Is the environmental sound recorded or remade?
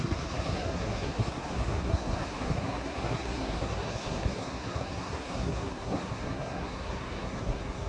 remade